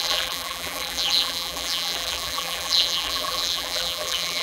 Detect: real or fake fake